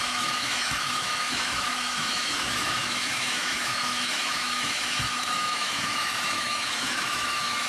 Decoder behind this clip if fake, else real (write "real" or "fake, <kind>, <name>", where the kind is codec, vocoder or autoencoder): fake, autoencoder, DAC-VAE